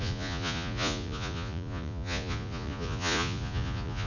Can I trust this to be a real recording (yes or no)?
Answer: no